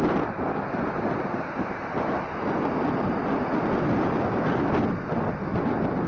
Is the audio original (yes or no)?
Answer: yes